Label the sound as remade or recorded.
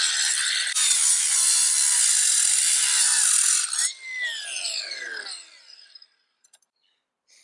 remade